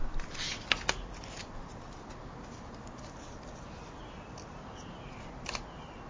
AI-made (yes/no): no